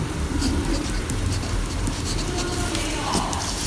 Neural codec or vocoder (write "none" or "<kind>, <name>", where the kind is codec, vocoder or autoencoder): vocoder, BigVGAN v2